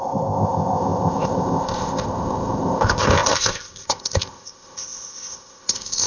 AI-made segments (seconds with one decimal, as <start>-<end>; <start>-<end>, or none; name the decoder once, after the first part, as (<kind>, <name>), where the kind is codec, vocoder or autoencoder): 0.0-6.1 (codec, ZipCodec)